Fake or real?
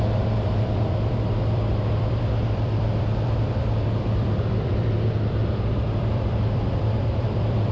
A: fake